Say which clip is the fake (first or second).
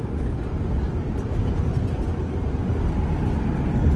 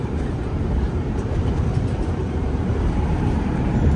second